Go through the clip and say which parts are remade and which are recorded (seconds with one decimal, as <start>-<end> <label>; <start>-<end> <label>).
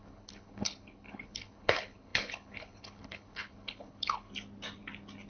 0.0-4.3 remade; 4.3-5.3 recorded